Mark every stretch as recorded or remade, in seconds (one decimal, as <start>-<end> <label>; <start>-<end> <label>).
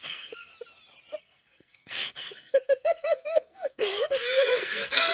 0.0-0.5 remade; 0.5-1.2 recorded; 1.2-5.1 remade